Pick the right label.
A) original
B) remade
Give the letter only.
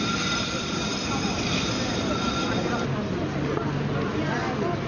A